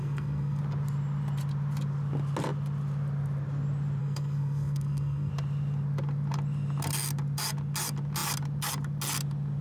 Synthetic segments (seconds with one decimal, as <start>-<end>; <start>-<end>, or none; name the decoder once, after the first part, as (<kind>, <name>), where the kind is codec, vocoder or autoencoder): 0.0-0.6 (codec, SNAC); 4.0-5.3